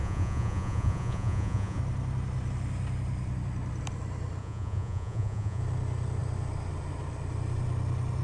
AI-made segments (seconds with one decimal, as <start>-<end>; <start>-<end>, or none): 0.0-1.8; 4.4-5.6